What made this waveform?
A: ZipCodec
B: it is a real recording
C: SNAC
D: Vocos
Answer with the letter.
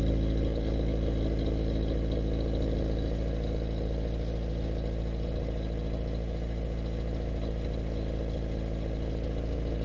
B